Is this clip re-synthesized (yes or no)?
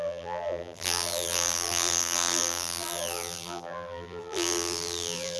yes